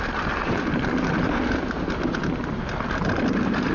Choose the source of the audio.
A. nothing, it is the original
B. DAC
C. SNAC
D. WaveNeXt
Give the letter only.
A